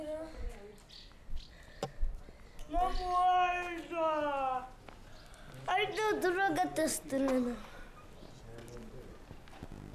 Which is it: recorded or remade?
recorded